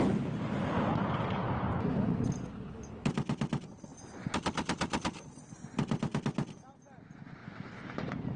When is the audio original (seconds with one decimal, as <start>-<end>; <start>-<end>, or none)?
0.0-8.4